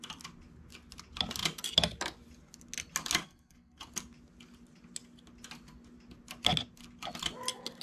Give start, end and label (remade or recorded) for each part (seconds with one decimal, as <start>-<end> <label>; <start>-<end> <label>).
0.0-3.2 recorded; 3.2-3.8 remade; 3.8-7.8 recorded